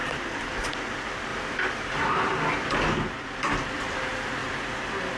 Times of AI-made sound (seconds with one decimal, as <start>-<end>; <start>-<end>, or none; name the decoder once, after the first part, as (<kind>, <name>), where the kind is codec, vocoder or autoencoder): 0.0-0.7 (vocoder, BigVGAN v2); 1.3-2.7; 4.4-5.2